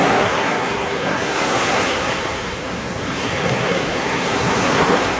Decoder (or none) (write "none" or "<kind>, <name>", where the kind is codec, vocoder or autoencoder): codec, SNAC